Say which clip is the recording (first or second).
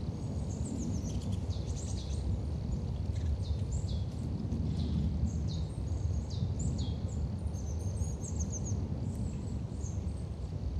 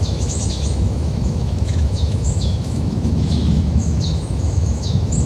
first